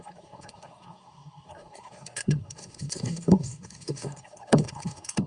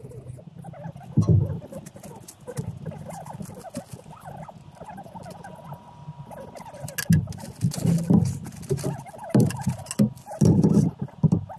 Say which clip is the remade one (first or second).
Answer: first